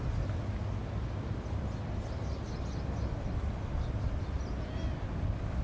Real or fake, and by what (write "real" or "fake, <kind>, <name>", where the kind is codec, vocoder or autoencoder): real